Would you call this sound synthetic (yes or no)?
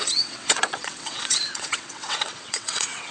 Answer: yes